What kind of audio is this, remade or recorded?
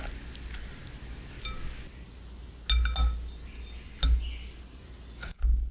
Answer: recorded